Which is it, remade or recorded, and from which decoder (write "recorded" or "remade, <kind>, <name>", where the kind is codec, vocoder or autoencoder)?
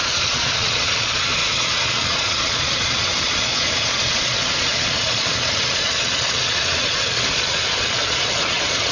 remade, vocoder, Vocos